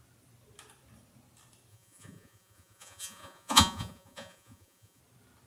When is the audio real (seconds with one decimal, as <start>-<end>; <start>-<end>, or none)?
0.0-1.7; 5.0-5.5